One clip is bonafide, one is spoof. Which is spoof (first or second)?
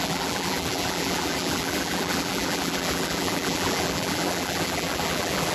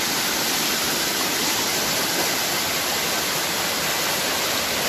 first